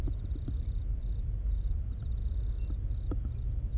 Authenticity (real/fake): real